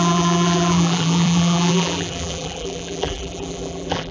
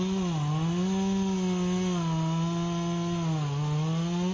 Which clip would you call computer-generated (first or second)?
first